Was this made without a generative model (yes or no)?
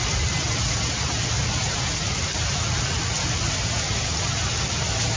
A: yes